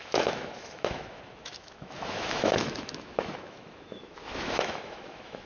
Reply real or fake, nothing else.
fake